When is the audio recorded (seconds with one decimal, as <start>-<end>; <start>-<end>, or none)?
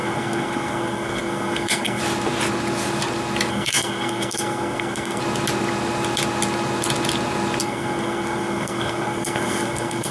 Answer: 2.0-3.5; 5.2-7.6